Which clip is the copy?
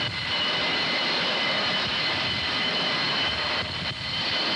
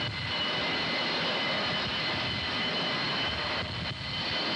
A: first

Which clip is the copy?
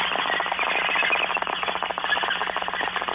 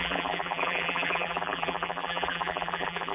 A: second